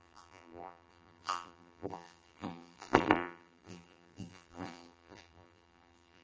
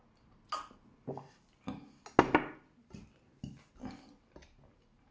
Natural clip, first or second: second